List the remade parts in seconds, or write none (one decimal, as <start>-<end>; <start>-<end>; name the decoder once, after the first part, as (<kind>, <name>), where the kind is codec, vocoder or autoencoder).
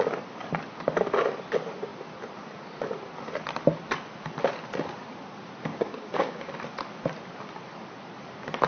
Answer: 5.7-6.5 (codec, DAC)